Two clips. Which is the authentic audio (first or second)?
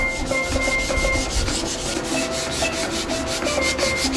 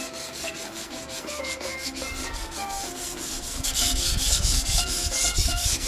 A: first